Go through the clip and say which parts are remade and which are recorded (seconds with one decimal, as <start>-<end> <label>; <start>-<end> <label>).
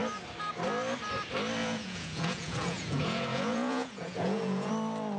0.0-1.6 recorded; 1.6-4.7 remade; 4.7-5.2 recorded